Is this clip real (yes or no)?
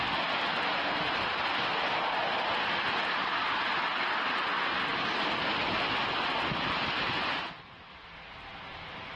yes